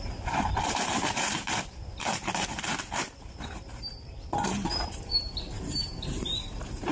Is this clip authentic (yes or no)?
no